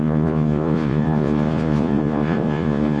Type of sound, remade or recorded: remade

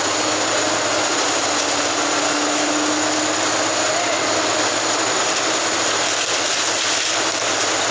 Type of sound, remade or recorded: recorded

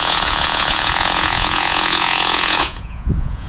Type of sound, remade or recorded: remade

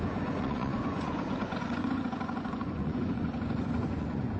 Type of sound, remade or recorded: remade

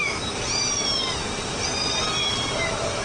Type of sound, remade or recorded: recorded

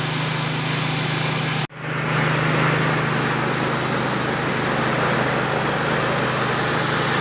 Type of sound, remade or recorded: recorded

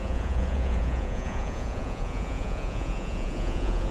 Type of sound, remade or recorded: remade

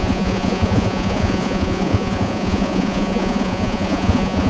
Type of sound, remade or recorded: remade